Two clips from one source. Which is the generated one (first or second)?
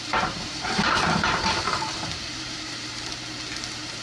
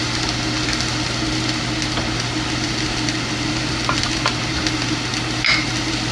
first